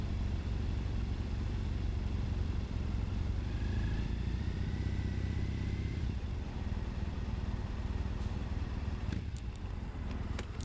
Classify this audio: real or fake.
fake